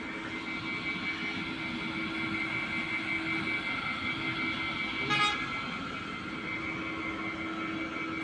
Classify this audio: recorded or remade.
recorded